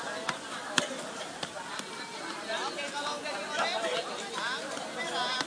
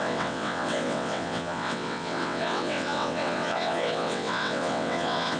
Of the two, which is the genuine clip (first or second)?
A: first